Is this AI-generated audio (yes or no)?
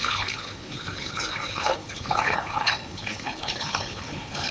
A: yes